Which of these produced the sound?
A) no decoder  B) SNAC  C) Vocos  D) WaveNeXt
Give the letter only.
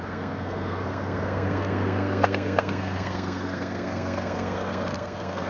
B